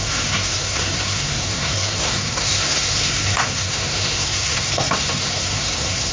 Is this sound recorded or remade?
remade